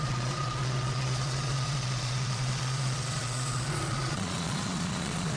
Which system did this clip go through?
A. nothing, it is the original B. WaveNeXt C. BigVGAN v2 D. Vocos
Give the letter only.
D